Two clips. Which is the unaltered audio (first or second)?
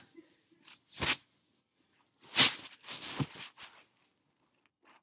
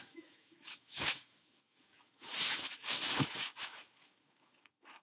first